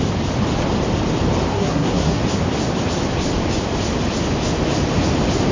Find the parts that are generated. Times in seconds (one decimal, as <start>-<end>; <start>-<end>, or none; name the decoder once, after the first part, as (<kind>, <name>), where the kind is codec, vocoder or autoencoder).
1.5-2.2 (codec, SNAC)